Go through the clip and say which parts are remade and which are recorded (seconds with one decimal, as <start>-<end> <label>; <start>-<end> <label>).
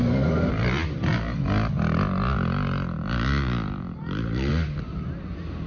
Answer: 0.0-0.5 remade; 0.5-5.7 recorded